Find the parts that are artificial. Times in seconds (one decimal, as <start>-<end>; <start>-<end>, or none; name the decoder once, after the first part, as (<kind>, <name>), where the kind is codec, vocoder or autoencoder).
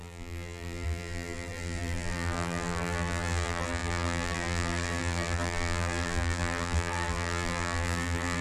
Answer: 0.0-8.4 (vocoder, BigVGAN v2)